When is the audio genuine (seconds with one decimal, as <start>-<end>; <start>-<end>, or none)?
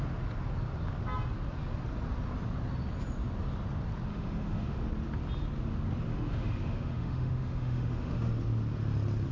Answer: 0.0-4.1; 4.8-6.1; 8.3-9.3